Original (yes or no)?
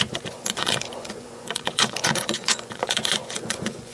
no